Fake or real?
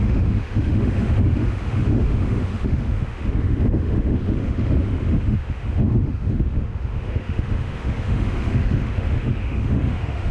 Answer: fake